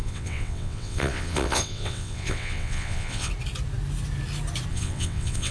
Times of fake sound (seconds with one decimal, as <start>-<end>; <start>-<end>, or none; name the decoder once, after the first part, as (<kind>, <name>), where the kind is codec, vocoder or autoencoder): 0.0-3.3 (vocoder, WaveNeXt); 4.7-5.5